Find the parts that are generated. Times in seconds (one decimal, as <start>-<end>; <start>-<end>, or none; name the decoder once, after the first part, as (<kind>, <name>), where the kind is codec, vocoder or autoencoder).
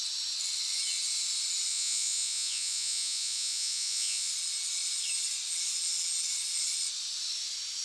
1.7-4.3 (vocoder, Vocos)